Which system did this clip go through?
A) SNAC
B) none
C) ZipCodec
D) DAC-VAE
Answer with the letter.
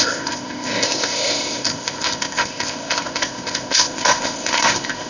C